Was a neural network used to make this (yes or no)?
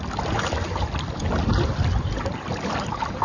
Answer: no